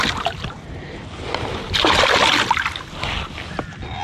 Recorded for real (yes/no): yes